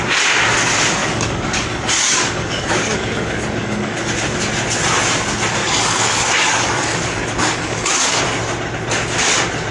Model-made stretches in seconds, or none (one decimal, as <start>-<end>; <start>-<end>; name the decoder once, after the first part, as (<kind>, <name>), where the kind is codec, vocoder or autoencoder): 1.0-4.1 (codec, DAC); 5.6-8.2